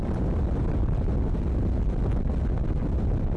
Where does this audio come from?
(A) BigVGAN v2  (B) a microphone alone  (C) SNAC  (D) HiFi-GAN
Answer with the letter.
B